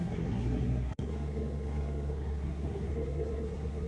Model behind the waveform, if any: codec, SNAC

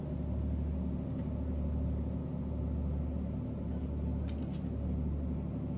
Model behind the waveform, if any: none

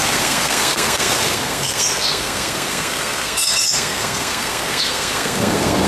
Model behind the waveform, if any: codec, SNAC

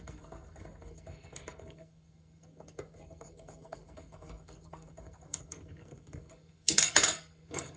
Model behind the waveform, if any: codec, SNAC